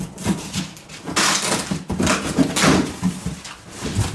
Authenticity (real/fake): real